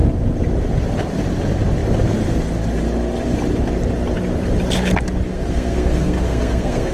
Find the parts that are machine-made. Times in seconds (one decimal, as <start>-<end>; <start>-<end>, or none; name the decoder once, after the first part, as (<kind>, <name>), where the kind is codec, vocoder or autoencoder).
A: 5.3-6.9 (codec, SNAC)